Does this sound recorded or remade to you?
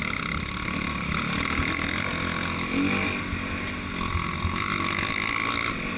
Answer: recorded